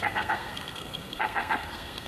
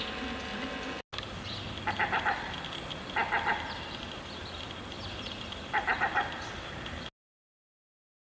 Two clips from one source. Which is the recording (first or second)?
second